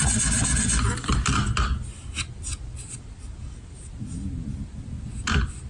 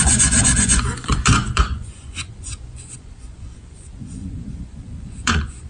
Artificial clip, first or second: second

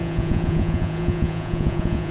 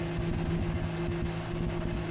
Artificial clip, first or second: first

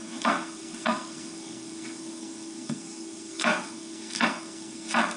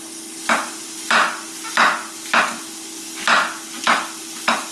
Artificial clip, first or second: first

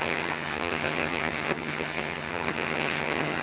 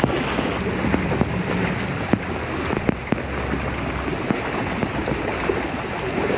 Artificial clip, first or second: first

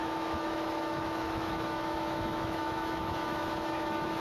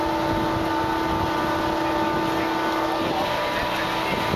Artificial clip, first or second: first